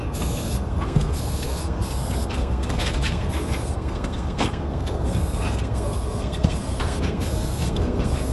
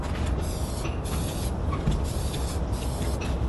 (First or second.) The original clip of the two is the second